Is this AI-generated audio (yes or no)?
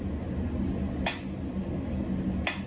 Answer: no